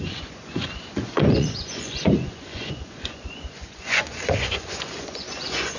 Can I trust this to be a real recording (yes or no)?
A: no